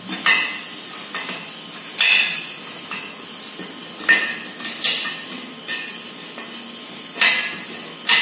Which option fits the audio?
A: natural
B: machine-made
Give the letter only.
A